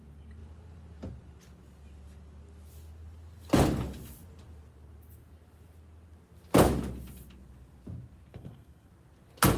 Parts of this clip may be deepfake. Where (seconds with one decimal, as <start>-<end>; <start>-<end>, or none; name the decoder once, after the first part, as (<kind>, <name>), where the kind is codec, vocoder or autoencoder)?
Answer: 8.3-8.9 (codec, SNAC)